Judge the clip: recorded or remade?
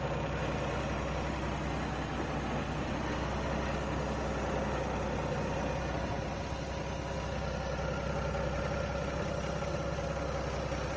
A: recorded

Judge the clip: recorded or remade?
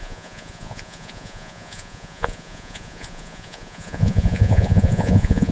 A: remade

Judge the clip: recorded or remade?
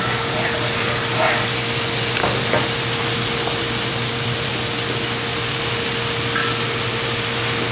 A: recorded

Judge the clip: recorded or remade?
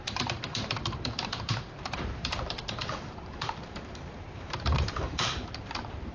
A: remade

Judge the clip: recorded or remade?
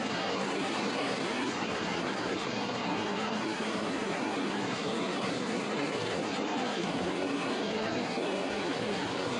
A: remade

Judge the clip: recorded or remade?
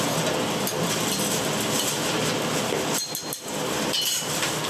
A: recorded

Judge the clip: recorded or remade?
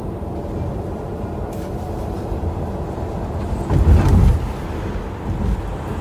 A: recorded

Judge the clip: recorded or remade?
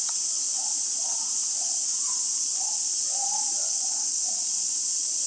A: recorded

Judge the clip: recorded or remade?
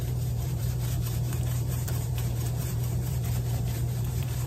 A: remade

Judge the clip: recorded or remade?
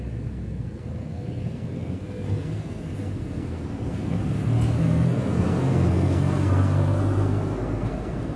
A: remade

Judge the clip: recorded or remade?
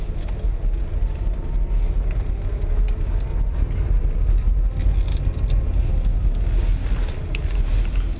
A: recorded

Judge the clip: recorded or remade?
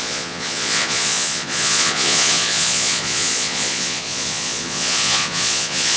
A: remade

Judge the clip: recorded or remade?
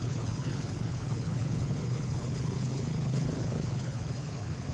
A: remade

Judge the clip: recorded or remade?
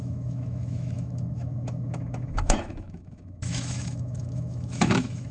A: remade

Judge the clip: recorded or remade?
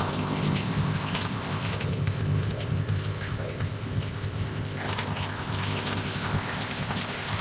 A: remade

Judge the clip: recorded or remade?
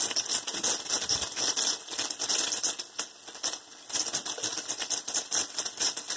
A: recorded